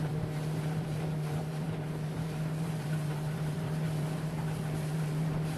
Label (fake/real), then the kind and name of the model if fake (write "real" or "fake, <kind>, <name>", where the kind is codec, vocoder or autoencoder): fake, vocoder, BigVGAN v2